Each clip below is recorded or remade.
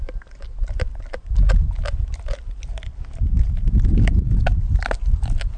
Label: recorded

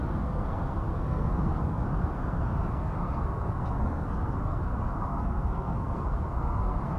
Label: remade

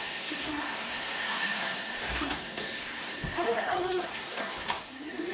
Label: remade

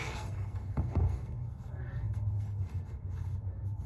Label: remade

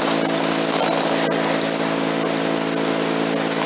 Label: recorded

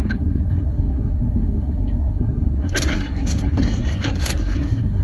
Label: remade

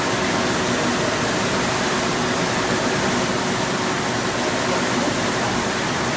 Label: recorded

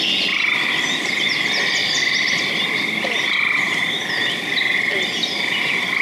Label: recorded